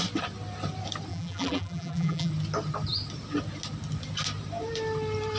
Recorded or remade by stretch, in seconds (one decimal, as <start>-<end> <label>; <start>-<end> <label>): 0.0-1.1 recorded; 1.1-2.3 remade; 2.3-5.4 recorded